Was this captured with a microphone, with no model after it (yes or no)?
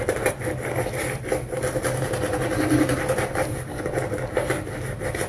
yes